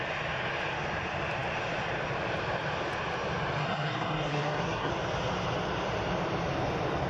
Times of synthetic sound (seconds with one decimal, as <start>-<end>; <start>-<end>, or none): 3.6-4.9